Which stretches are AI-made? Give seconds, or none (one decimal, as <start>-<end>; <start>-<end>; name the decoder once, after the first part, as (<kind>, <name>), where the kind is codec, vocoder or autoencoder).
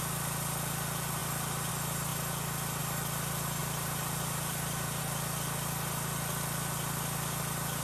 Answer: 3.6-5.0 (vocoder, BigVGAN v2)